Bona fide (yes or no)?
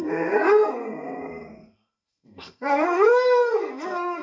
no